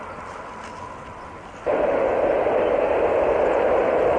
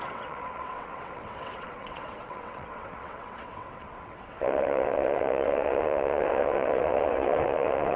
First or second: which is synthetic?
second